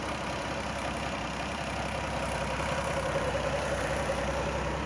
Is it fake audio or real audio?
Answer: fake